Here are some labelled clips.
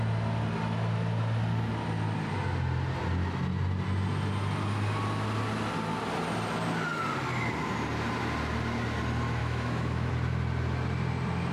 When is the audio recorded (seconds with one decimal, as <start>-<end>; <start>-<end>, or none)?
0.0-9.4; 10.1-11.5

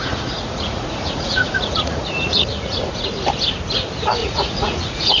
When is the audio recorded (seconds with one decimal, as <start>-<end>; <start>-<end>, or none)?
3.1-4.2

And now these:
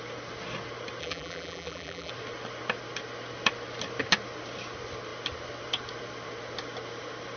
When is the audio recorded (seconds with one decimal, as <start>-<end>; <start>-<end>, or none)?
0.0-1.0; 2.1-7.4

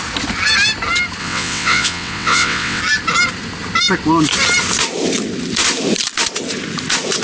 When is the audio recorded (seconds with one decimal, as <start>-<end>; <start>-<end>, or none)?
0.0-1.2; 2.8-7.2

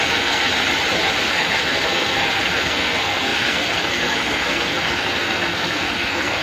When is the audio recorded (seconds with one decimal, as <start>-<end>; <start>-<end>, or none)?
0.5-1.2

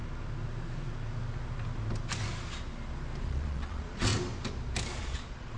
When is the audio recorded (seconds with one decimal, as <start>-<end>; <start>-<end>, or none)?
0.0-3.2; 4.1-5.0

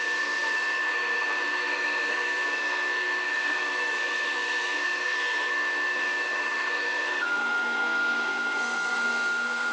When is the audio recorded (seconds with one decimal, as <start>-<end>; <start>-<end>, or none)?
none

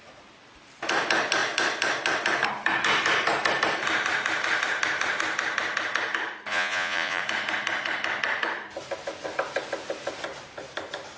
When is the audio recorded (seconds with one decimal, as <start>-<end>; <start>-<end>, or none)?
0.0-6.5; 7.2-11.2